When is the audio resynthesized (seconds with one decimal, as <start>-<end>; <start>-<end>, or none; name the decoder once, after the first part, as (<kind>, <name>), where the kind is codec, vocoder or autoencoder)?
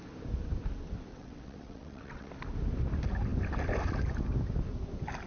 1.1-2.3 (vocoder, WaveNeXt)